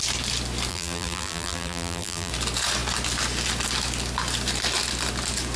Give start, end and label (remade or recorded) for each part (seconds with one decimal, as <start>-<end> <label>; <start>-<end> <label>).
0.0-0.7 recorded; 0.7-2.3 remade; 2.3-5.6 recorded